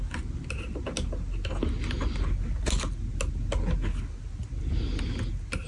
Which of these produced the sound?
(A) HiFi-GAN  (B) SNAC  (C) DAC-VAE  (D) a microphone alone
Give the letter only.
D